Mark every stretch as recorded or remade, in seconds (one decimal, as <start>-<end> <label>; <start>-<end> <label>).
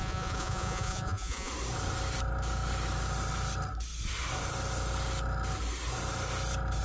0.0-1.5 remade; 1.5-6.8 recorded